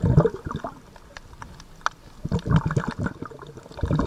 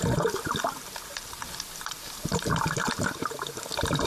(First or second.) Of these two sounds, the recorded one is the first